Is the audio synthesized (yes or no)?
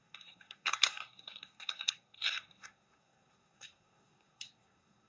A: yes